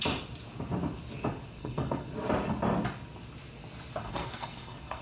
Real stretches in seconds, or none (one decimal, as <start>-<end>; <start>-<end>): 0.0-1.6; 2.1-4.0